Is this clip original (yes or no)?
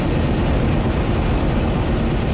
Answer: yes